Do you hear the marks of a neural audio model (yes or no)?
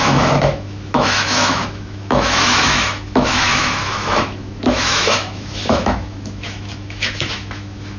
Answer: yes